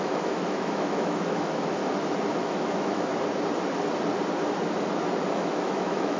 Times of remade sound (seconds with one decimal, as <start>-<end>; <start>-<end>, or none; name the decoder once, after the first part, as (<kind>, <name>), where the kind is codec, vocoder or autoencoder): 0.0-1.8 (autoencoder, DAC-VAE); 2.4-3.1; 5.3-6.2